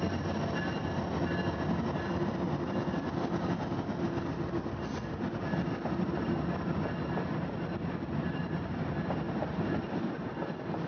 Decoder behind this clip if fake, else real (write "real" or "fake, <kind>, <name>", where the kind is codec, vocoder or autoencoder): real